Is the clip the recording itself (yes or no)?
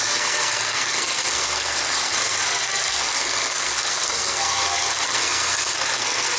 no